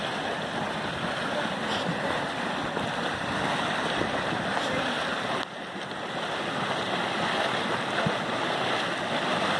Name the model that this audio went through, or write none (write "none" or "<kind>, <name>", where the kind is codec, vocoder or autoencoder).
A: none